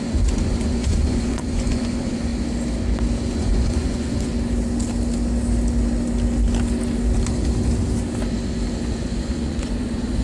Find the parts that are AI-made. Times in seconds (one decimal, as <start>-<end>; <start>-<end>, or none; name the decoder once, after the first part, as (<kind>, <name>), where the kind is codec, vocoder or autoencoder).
0.0-2.3 (vocoder, Vocos); 3.3-4.3; 8.9-10.2